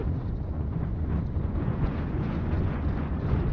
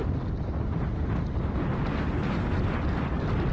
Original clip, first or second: second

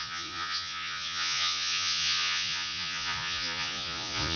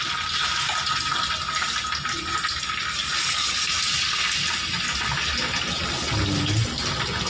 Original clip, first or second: second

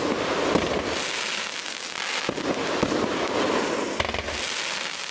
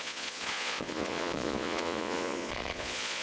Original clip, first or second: first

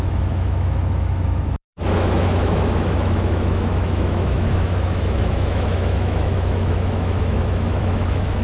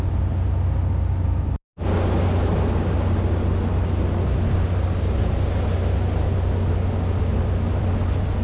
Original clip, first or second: second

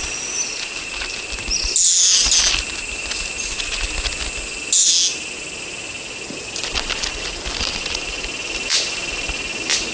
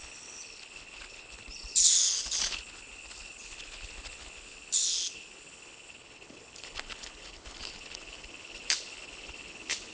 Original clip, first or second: first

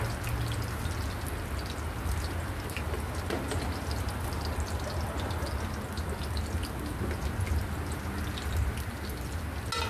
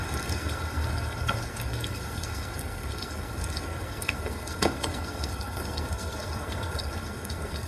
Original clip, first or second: first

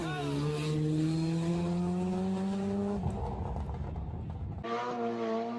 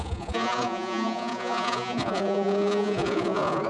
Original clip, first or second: first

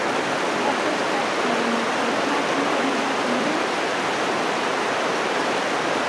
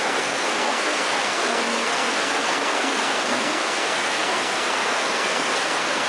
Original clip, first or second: first